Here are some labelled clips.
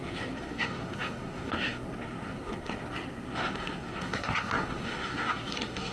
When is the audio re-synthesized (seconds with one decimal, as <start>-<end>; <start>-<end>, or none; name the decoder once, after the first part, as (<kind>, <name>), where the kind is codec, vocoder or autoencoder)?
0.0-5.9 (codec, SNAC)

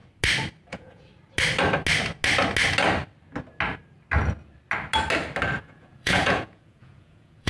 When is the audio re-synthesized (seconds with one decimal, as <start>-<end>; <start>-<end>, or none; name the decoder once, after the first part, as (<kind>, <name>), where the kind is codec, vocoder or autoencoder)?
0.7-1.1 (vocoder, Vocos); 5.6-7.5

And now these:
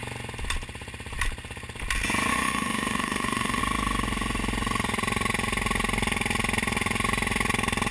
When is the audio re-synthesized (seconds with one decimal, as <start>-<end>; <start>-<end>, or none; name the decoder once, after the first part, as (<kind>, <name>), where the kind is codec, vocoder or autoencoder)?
2.3-3.6 (autoencoder, DAC-VAE)